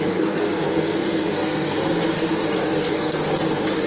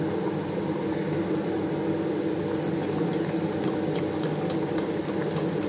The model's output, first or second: first